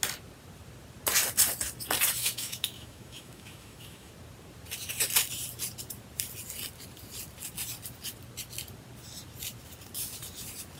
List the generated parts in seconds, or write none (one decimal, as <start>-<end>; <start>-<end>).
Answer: 2.2-4.1